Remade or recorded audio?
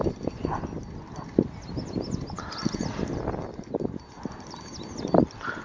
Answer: recorded